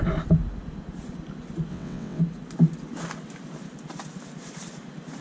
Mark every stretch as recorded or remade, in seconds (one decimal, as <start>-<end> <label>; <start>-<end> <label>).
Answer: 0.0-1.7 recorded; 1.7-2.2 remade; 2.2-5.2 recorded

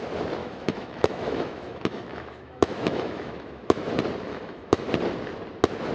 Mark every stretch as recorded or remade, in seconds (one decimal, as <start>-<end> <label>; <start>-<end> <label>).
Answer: 0.0-0.4 recorded; 0.4-3.9 remade; 3.9-4.3 recorded; 4.3-4.9 remade; 4.9-5.9 recorded

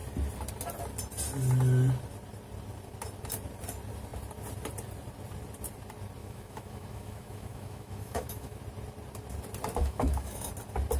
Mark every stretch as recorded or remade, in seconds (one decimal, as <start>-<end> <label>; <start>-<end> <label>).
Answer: 0.0-6.2 recorded; 6.2-8.6 remade; 8.6-9.8 recorded; 9.8-10.5 remade; 10.5-11.0 recorded

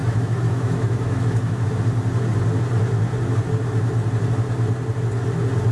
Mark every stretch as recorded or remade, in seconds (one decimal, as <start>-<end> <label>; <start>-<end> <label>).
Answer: 0.0-1.7 remade; 1.7-5.7 recorded